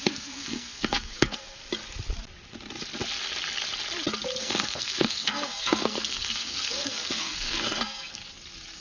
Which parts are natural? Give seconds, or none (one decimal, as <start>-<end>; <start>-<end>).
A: 1.6-4.4; 8.2-8.8